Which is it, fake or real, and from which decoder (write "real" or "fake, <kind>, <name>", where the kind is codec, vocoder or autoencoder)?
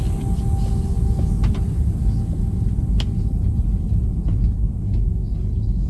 real